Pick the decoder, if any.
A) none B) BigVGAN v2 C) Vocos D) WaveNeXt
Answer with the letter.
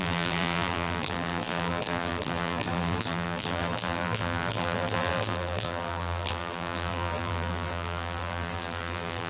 B